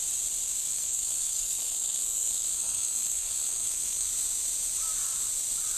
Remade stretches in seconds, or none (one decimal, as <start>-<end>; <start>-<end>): 0.6-4.1